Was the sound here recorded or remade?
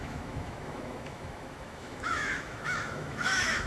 remade